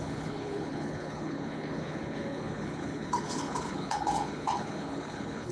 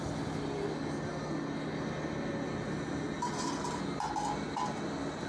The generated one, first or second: first